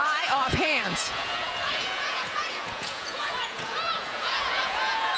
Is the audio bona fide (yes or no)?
no